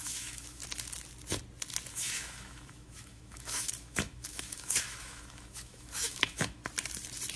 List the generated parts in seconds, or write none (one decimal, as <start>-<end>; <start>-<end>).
0.0-0.6; 1.9-6.6